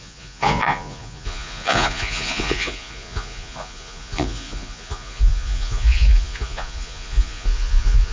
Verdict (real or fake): fake